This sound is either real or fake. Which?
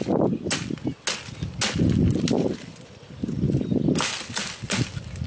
real